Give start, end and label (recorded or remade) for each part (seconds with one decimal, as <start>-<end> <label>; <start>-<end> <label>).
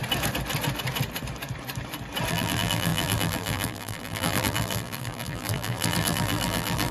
0.0-2.3 recorded; 2.3-6.9 remade